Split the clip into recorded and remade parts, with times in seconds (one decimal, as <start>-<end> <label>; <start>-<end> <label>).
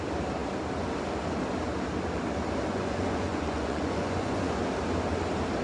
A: 0.0-2.7 recorded; 2.7-4.6 remade; 4.6-5.6 recorded